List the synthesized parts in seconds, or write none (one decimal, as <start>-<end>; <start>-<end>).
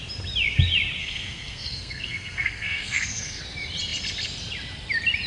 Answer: 1.0-3.4